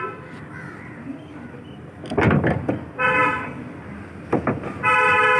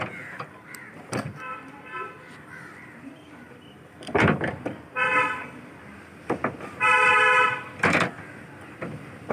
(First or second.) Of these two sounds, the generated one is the second